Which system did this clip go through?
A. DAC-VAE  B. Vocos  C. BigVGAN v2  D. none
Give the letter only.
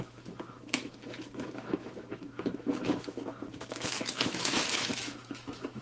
A